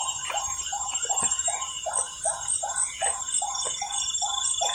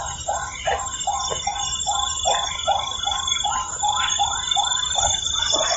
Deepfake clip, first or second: first